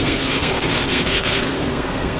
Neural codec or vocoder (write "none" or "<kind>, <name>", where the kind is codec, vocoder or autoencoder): codec, SNAC